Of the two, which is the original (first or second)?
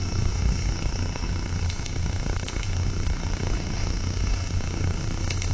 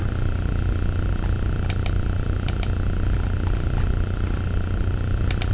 second